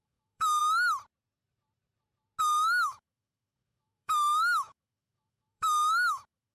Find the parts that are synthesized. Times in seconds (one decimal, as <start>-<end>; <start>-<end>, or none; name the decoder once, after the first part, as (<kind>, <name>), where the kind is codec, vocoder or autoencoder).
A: 0.0-0.6 (autoencoder, DAC-VAE); 2.4-6.5